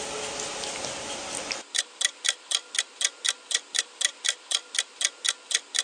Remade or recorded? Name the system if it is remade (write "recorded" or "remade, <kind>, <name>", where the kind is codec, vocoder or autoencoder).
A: recorded